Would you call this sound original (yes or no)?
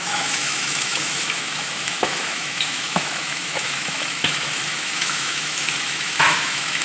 no